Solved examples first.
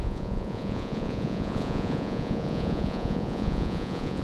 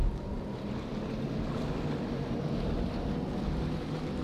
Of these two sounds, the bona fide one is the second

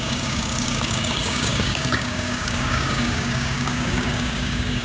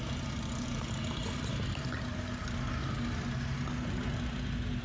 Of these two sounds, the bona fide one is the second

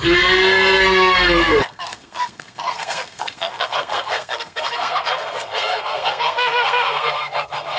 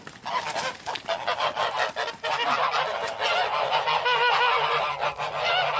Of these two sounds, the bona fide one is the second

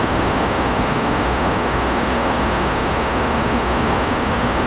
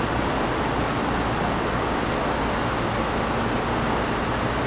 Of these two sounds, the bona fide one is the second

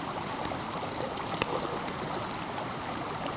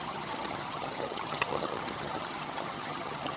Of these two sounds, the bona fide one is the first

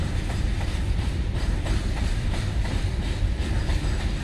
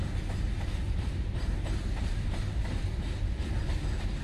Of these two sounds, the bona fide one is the second